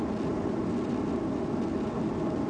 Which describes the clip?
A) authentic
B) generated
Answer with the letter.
A